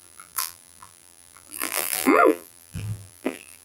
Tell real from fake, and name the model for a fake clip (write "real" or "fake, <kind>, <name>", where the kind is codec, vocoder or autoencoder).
fake, vocoder, BigVGAN v2